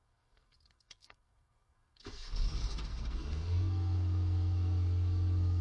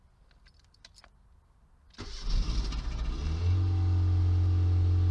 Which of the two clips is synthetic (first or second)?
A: first